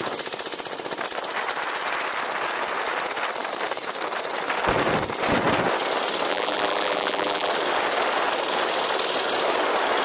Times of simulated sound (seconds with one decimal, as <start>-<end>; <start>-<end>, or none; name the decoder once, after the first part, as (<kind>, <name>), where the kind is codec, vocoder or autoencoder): 6.3-7.5 (vocoder, BigVGAN v2)